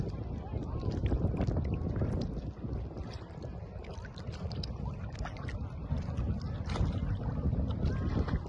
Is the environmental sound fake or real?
real